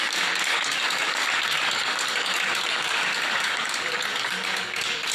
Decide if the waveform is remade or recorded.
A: remade